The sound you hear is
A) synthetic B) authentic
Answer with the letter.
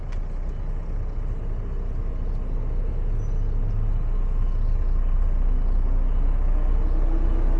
B